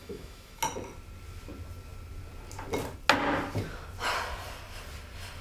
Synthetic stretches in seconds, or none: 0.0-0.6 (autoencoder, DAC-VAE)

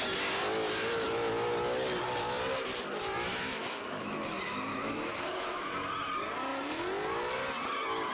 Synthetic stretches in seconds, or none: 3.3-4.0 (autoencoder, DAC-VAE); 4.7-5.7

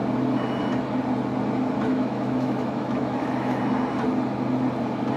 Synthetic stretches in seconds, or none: 1.9-3.6 (autoencoder, DAC-VAE)